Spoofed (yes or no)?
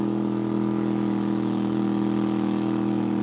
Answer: yes